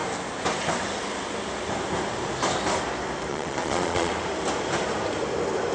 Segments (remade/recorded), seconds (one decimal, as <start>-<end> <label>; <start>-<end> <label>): 0.0-3.3 recorded; 3.3-4.1 remade; 4.1-5.7 recorded